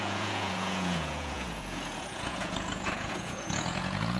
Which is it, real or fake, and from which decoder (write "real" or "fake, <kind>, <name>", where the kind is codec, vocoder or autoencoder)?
fake, vocoder, Vocos